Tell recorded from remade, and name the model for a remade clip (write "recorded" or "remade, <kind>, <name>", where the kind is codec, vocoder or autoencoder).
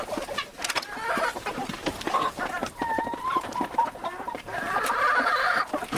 remade, vocoder, BigVGAN v2